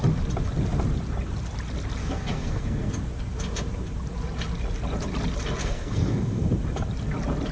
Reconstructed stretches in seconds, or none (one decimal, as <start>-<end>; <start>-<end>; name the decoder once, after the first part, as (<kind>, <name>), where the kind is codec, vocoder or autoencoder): 2.0-2.9 (codec, SNAC); 5.6-6.5